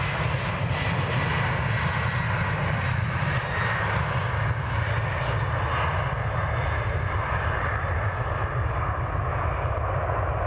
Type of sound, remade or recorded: recorded